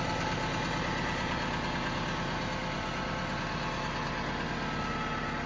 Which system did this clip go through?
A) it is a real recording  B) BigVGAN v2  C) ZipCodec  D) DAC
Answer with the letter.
A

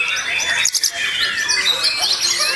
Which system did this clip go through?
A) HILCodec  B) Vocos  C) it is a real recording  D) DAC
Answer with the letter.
C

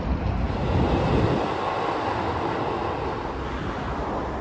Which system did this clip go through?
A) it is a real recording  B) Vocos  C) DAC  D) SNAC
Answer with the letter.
A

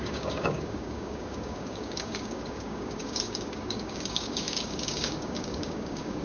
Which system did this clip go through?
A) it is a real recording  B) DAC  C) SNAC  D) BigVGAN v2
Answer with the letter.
B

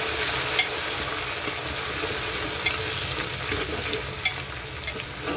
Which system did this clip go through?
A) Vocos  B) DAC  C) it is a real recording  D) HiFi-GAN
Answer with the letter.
C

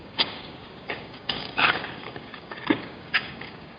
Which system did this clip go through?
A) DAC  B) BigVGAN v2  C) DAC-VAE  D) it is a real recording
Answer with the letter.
A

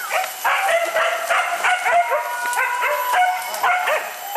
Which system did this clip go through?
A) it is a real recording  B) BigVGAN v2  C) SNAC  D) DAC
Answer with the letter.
A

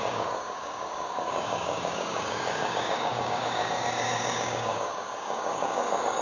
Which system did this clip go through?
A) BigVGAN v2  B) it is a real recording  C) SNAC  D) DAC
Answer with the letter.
D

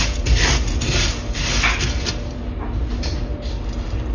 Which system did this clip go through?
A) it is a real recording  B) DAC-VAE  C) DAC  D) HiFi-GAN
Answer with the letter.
A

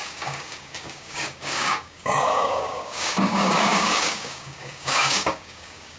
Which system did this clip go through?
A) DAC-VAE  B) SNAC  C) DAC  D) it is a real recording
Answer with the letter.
C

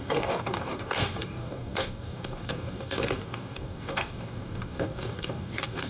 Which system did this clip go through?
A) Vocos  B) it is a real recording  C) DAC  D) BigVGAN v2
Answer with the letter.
C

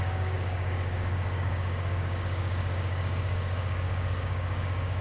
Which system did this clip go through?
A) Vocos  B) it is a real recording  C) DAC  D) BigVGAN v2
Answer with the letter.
C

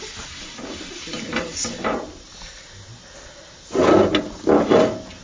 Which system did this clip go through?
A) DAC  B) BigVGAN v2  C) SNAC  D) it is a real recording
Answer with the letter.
D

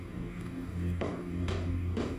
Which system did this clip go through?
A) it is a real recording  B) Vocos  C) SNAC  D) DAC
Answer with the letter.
D